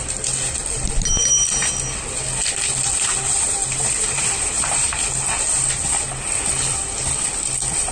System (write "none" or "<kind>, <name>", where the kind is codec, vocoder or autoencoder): none